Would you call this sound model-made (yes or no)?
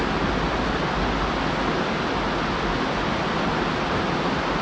no